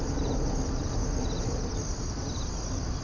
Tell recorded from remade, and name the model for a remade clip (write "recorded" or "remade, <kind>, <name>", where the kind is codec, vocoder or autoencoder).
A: recorded